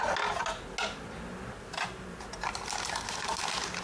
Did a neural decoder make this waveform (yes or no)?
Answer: no